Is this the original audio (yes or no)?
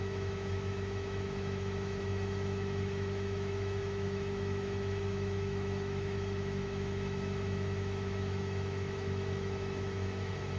no